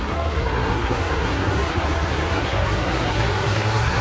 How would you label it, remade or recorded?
remade